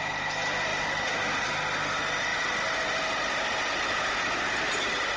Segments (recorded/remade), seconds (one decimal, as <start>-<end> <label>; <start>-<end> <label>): 0.0-5.2 recorded

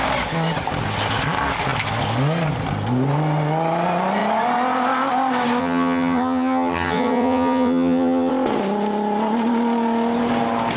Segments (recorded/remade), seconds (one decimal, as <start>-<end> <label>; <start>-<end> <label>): 0.0-5.6 recorded; 5.6-8.3 remade; 8.3-10.8 recorded

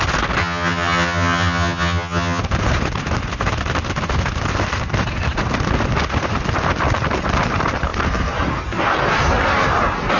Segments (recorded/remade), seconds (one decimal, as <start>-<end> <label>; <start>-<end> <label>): 0.0-0.4 recorded; 0.4-2.4 remade; 2.4-10.2 recorded

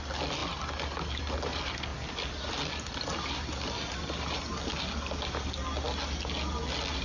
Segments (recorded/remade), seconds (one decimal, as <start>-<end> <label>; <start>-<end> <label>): 0.0-7.0 recorded

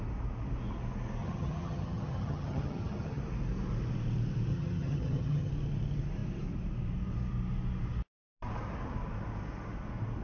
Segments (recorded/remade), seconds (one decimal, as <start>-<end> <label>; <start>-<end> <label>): 0.0-1.2 recorded; 1.2-3.2 remade; 3.2-4.5 recorded; 4.5-5.5 remade; 5.5-10.2 recorded